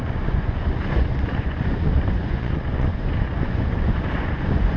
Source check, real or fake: fake